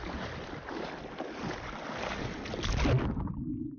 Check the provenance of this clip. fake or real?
real